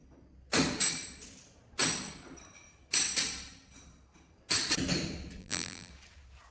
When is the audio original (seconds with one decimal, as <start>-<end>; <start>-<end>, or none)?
0.0-5.4; 5.9-6.5